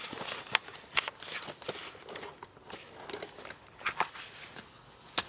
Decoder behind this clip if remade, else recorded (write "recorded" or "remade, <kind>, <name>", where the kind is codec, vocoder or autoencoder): recorded